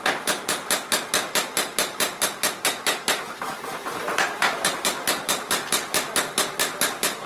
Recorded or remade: recorded